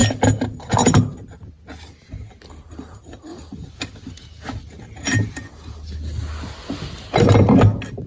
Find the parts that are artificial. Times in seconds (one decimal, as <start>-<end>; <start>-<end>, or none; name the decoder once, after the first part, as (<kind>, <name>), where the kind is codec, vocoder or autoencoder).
none

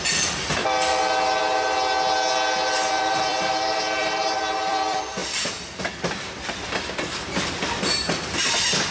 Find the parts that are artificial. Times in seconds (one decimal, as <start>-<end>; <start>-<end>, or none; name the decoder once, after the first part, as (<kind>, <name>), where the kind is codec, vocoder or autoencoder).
0.0-0.6 (vocoder, BigVGAN v2); 2.9-8.9

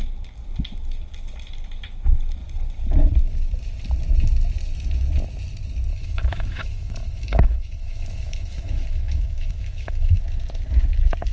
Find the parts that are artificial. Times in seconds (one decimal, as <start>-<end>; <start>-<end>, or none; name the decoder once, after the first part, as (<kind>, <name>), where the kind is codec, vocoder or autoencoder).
5.9-10.2 (autoencoder, DAC-VAE)

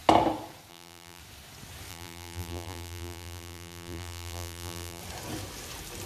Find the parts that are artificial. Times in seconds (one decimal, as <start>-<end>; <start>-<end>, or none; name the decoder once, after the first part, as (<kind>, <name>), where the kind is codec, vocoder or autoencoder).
0.7-1.2 (vocoder, BigVGAN v2); 1.9-5.0

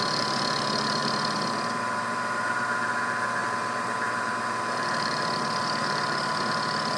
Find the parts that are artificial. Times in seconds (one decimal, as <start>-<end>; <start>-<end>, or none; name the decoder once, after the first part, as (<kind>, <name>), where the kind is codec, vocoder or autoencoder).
0.0-7.0 (vocoder, BigVGAN v2)

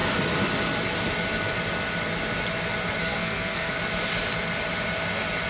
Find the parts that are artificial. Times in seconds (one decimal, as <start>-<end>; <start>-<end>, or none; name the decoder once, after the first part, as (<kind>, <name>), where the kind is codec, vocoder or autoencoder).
3.0-3.7 (codec, SNAC)